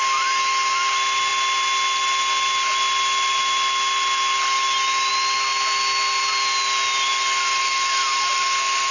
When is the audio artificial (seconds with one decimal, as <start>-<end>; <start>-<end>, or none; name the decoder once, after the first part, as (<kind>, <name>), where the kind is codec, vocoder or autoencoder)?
none